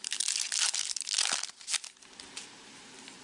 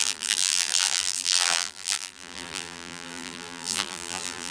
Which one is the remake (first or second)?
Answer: second